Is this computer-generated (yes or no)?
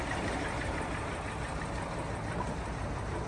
no